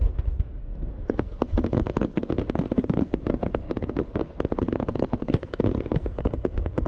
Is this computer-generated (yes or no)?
yes